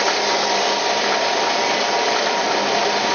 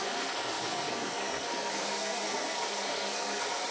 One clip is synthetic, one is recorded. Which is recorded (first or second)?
first